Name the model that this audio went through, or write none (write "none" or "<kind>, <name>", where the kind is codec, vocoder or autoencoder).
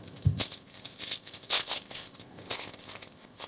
codec, ZipCodec